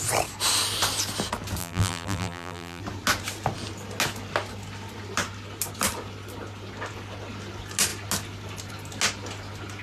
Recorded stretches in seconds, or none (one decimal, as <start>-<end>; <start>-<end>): 0.0-1.6; 2.8-9.8